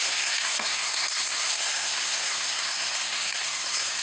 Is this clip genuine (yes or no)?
no